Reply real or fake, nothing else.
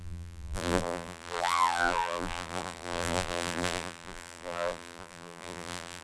fake